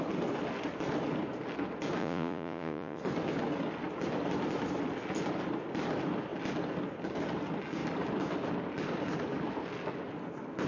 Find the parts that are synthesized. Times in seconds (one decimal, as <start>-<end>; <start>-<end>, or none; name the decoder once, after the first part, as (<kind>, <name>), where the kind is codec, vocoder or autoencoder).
2.0-3.0 (vocoder, Vocos)